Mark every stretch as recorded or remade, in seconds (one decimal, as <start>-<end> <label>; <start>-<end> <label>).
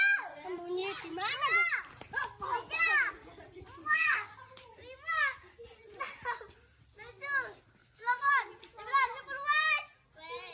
0.0-3.8 recorded; 3.8-4.3 remade; 4.3-7.8 recorded; 7.8-8.3 remade; 8.3-10.5 recorded